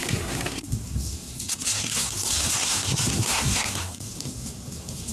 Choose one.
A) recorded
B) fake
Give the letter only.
B